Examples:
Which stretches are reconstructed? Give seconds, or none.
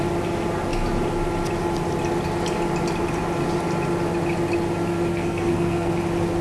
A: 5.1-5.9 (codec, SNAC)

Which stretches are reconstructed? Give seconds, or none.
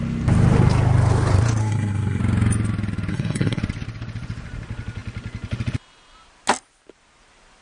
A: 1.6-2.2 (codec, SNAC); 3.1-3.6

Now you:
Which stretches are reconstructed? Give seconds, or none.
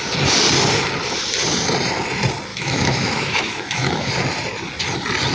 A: 2.5-4.1 (autoencoder, DAC-VAE)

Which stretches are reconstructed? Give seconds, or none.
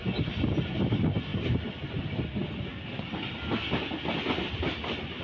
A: none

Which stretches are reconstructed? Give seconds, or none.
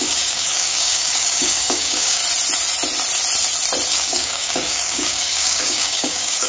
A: 0.0-2.2 (codec, DAC); 3.9-6.5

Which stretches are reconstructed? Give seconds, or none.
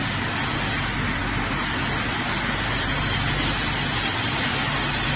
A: none